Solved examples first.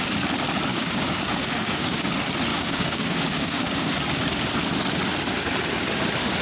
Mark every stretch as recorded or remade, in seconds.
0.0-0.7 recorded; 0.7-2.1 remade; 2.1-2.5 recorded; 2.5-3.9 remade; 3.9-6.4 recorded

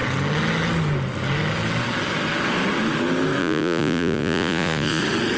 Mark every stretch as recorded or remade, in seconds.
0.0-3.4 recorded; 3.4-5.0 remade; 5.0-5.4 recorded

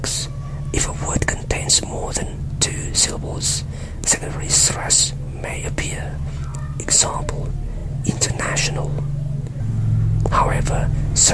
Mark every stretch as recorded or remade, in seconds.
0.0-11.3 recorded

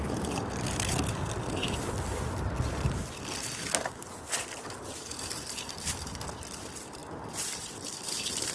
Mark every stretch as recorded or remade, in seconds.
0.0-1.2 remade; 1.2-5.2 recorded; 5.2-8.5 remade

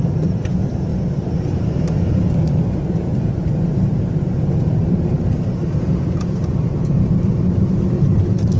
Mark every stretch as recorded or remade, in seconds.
0.0-8.6 remade

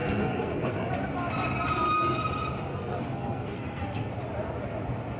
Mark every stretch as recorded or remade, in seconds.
0.0-0.9 remade; 0.9-2.7 recorded; 2.7-4.1 remade; 4.1-5.2 recorded